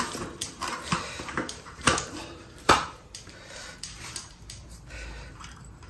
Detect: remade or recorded remade